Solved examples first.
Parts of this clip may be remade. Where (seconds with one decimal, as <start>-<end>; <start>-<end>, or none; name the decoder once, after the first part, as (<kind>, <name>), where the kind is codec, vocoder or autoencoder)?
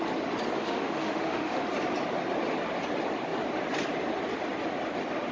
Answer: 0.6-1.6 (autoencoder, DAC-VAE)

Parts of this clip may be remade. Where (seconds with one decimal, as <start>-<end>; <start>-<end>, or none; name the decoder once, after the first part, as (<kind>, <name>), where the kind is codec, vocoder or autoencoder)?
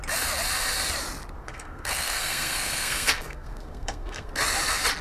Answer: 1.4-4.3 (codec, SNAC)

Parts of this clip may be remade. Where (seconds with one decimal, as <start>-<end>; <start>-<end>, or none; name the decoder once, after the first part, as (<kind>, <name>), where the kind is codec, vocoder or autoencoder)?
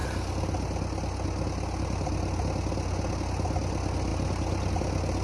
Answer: none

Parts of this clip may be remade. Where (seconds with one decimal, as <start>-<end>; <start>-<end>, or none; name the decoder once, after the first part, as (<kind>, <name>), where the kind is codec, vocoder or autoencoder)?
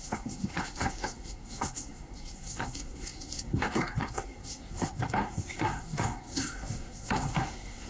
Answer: 0.0-7.9 (codec, SNAC)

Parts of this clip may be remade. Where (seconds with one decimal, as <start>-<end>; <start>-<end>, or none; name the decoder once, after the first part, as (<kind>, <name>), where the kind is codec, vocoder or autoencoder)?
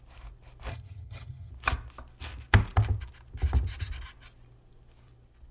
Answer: 0.7-1.5 (vocoder, HiFi-GAN)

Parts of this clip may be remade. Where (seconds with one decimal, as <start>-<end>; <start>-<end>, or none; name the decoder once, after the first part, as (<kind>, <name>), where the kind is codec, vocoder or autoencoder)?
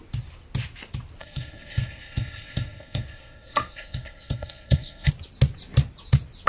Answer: 1.2-5.1 (codec, SNAC)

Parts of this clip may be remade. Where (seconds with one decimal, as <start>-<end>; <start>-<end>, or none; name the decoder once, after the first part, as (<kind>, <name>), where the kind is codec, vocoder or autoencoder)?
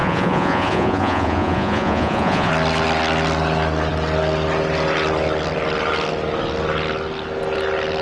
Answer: 0.0-2.5 (vocoder, Vocos)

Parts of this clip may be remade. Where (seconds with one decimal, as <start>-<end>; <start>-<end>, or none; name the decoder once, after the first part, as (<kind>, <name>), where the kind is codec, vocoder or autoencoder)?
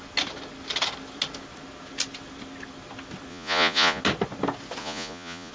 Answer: 3.3-4.0 (vocoder, Vocos); 4.8-5.5